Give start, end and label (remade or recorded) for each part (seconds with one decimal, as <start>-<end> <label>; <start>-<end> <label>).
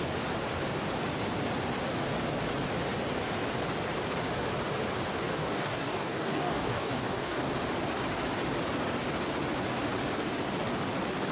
0.0-5.3 recorded; 5.3-7.5 remade; 7.5-11.3 recorded